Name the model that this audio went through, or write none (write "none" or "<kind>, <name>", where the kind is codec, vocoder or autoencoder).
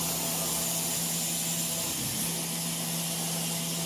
none